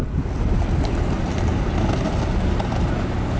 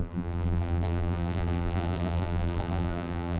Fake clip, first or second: second